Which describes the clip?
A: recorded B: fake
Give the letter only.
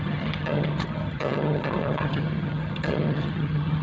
B